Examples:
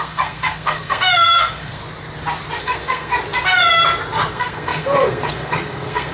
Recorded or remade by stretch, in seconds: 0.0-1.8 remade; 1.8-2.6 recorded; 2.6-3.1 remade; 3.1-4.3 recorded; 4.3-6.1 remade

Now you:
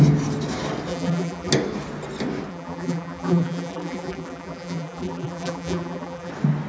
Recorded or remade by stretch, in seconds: 0.0-0.9 recorded; 0.9-1.5 remade; 1.5-2.5 recorded; 2.5-6.3 remade; 6.3-6.7 recorded

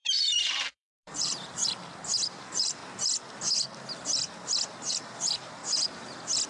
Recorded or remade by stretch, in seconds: 0.0-1.6 remade; 1.6-2.3 recorded; 2.3-2.8 remade; 2.8-4.9 recorded; 4.9-5.6 remade; 5.6-6.5 recorded

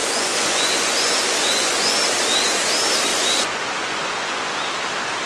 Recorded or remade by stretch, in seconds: 0.0-2.0 remade; 2.0-3.1 recorded; 3.1-4.7 remade; 4.7-5.3 recorded

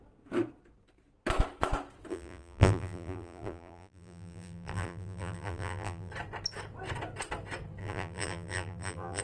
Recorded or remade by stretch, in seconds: 0.0-2.1 recorded; 2.1-6.1 remade; 6.1-7.8 recorded; 7.8-9.2 remade

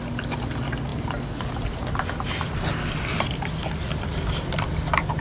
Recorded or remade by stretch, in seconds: 0.0-5.2 recorded

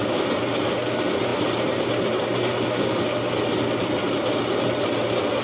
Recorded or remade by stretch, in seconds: 0.0-5.4 recorded

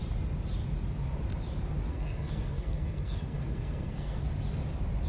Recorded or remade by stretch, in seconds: 0.0-1.9 recorded; 1.9-4.2 remade; 4.2-5.1 recorded